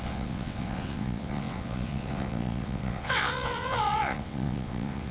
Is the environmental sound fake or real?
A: fake